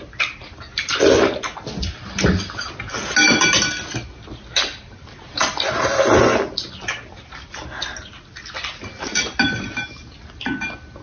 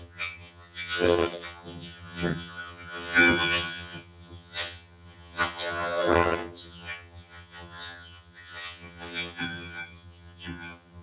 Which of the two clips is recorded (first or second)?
first